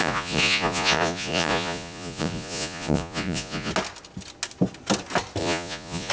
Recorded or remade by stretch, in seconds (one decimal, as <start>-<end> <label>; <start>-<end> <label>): 0.0-3.7 remade; 3.7-5.4 recorded; 5.4-6.1 remade